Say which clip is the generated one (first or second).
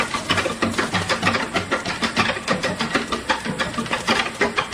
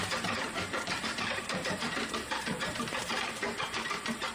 second